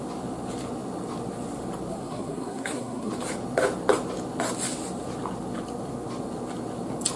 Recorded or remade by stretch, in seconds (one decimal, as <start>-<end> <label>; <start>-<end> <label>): 0.0-1.9 recorded; 1.9-3.1 remade; 3.1-7.2 recorded